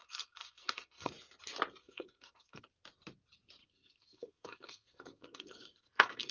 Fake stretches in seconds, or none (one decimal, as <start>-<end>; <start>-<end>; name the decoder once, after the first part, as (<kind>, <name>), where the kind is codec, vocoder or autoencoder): 0.0-1.1 (codec, SNAC); 1.8-2.6; 3.6-6.3